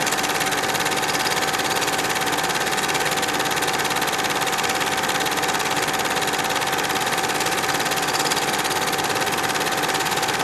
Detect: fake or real real